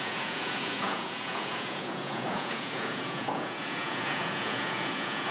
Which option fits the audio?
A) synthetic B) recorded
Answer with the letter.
A